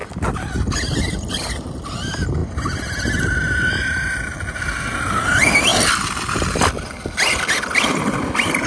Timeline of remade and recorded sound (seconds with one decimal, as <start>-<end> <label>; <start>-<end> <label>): 0.0-8.7 recorded